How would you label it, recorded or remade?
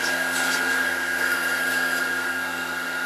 remade